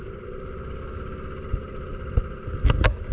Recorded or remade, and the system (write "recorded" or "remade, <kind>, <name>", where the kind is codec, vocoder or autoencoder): recorded